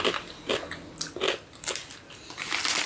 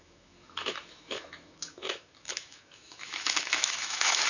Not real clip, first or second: second